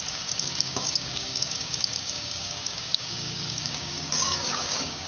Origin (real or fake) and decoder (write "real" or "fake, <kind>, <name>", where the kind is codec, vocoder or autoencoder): fake, codec, DAC